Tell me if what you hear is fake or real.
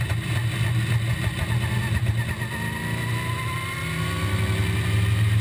real